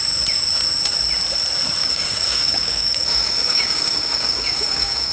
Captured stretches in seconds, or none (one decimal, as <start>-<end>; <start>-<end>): 0.0-1.8